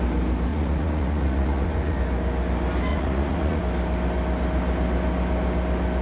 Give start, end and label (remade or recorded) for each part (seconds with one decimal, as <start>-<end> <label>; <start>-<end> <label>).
0.0-0.5 recorded; 0.5-2.0 remade; 2.0-2.9 recorded; 2.9-3.6 remade; 3.6-6.0 recorded